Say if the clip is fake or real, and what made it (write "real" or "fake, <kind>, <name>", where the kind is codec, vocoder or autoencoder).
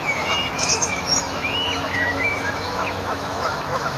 fake, autoencoder, DAC-VAE